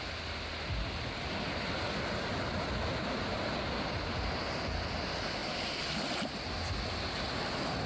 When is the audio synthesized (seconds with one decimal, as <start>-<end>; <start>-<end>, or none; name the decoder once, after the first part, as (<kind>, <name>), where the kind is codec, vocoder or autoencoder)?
none